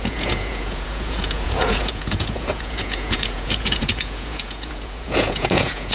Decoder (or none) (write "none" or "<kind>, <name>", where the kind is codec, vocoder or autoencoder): vocoder, Vocos